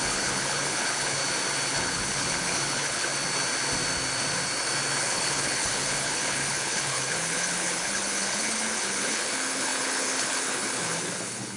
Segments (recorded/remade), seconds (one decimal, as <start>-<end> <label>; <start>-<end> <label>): 0.0-1.2 remade; 1.2-1.7 recorded; 1.7-3.1 remade; 3.1-5.0 recorded; 5.0-11.6 remade